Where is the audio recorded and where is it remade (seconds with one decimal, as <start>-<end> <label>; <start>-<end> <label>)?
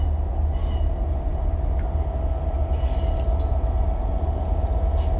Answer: 0.0-5.2 recorded